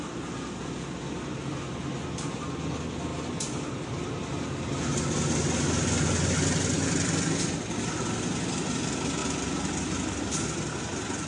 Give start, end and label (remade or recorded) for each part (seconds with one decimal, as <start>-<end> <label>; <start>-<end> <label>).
0.0-11.3 recorded